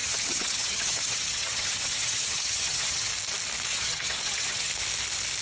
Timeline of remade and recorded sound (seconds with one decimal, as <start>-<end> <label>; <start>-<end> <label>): 0.0-3.1 remade; 3.1-3.7 recorded; 3.7-4.7 remade; 4.7-5.4 recorded